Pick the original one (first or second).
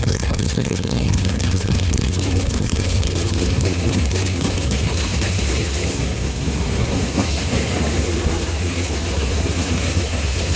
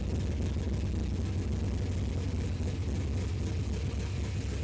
second